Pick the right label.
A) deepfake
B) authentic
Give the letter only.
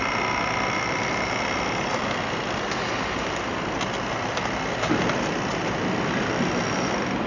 B